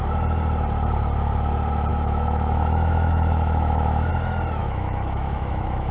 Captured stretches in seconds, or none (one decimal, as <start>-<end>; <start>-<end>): 0.0-1.9; 4.1-4.6